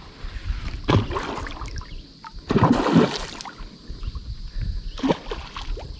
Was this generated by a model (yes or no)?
no